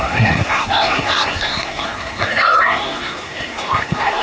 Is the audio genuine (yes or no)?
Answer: no